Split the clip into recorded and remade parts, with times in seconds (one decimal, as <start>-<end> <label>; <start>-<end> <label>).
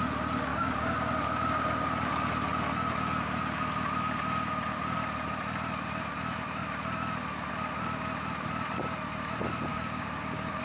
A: 0.0-0.5 recorded; 0.5-1.1 remade; 1.1-9.7 recorded; 9.7-10.6 remade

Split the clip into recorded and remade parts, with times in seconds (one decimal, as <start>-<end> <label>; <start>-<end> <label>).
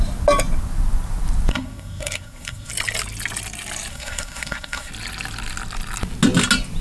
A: 0.0-1.5 recorded; 1.5-2.7 remade; 2.7-3.9 recorded; 3.9-4.9 remade; 4.9-6.8 recorded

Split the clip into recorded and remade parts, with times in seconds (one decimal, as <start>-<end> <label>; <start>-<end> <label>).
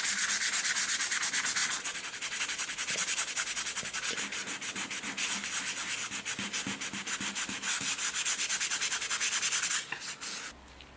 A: 0.0-1.6 recorded; 1.6-2.4 remade; 2.4-11.0 recorded